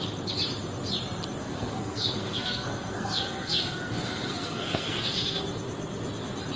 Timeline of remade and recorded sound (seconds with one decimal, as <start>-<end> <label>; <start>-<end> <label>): 0.0-1.4 recorded; 1.4-5.4 remade; 5.4-6.6 recorded